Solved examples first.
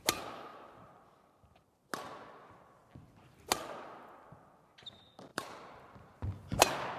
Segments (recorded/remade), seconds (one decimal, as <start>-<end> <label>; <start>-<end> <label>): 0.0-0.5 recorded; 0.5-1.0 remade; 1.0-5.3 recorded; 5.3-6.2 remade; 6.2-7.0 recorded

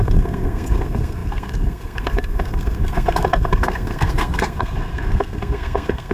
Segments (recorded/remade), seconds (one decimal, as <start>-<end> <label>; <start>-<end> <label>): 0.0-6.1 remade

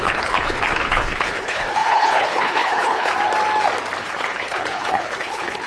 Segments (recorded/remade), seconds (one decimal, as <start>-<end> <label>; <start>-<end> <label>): 0.0-3.1 remade; 3.1-4.0 recorded; 4.0-5.7 remade

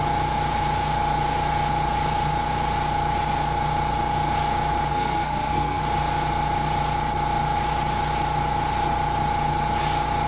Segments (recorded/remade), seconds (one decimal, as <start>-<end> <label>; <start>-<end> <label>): 0.0-4.9 recorded; 4.9-5.8 remade; 5.8-10.3 recorded